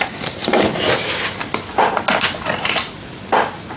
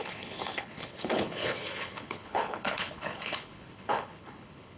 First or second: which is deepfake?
second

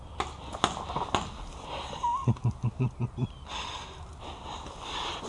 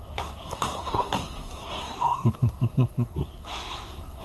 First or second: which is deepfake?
second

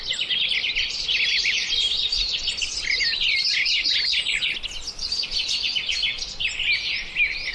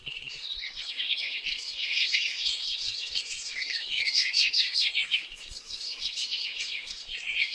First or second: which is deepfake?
second